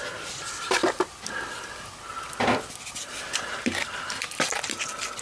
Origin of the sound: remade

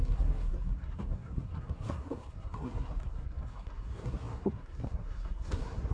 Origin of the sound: remade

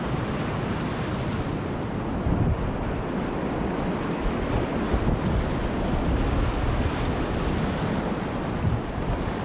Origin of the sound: recorded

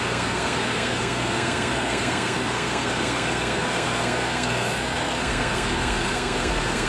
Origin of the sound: remade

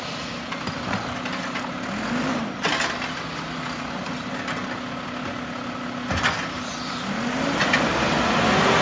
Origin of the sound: recorded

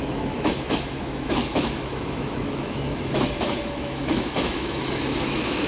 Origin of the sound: remade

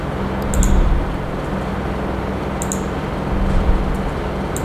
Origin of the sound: recorded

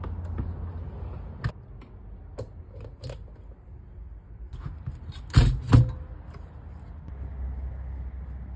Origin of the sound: recorded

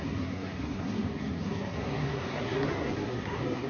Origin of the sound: remade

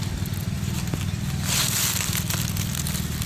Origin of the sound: recorded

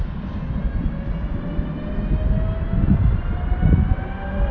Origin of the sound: recorded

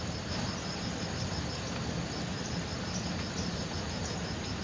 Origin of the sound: recorded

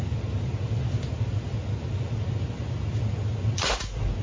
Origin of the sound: recorded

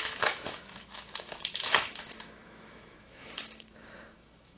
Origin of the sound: remade